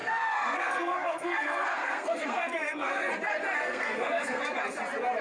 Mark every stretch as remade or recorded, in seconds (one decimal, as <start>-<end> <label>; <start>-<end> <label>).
0.0-3.1 remade; 3.1-3.6 recorded; 3.6-4.4 remade; 4.4-5.2 recorded